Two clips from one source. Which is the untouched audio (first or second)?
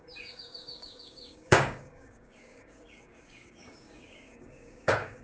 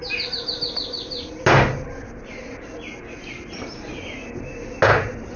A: second